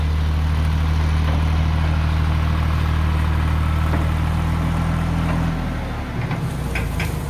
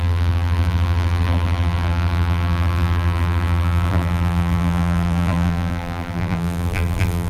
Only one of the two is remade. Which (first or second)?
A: second